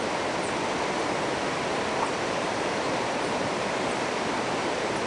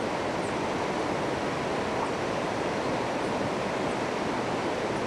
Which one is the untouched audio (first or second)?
second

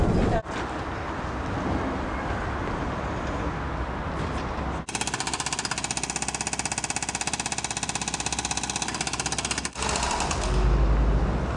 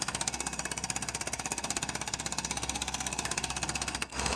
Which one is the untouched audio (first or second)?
first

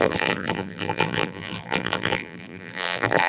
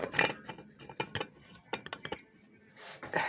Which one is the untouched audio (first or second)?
second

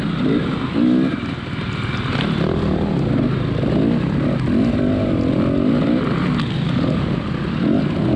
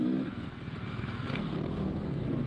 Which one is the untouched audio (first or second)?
first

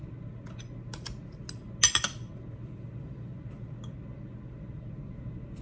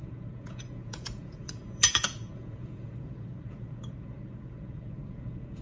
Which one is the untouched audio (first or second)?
first